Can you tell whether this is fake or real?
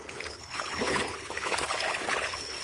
fake